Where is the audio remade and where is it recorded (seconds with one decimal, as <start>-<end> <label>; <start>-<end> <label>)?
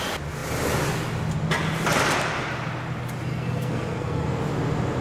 0.0-3.3 recorded; 3.3-4.4 remade; 4.4-5.0 recorded